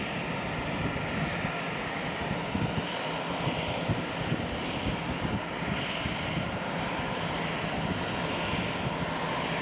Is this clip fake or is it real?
real